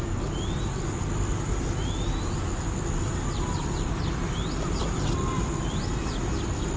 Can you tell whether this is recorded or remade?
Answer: recorded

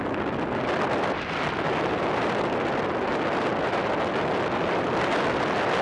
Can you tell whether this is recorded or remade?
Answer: recorded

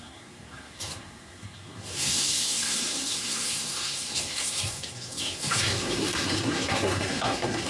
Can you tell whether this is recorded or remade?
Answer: remade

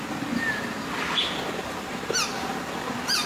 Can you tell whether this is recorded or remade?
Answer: recorded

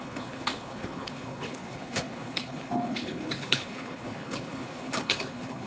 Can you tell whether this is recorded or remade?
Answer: remade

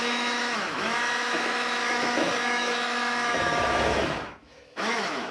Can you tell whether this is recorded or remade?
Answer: remade